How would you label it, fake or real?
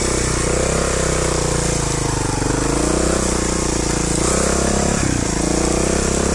real